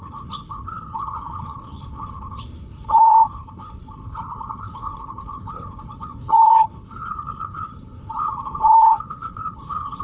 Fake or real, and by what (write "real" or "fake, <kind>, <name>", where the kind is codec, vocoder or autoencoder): fake, codec, HILCodec